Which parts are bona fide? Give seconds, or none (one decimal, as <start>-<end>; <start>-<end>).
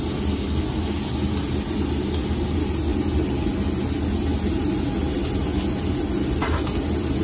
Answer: 0.0-7.2